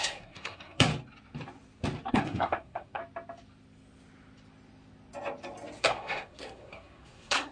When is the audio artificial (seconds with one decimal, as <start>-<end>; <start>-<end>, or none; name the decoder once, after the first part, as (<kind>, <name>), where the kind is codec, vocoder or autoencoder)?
0.0-0.9 (codec, SNAC); 2.1-3.0; 5.8-7.5